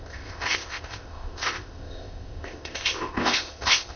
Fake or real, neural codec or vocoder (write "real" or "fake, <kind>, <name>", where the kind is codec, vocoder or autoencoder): fake, codec, ZipCodec